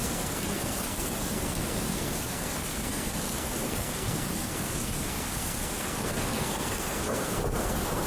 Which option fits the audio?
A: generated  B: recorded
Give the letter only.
A